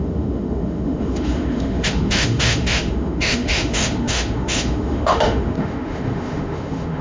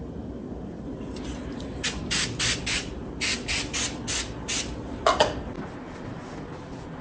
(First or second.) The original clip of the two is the second